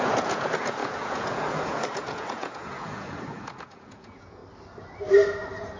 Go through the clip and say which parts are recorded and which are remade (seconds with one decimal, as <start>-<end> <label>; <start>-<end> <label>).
0.0-4.4 remade; 4.4-5.8 recorded